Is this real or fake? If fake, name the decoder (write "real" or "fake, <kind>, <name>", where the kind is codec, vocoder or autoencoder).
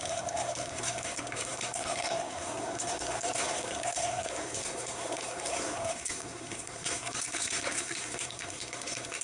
fake, codec, SNAC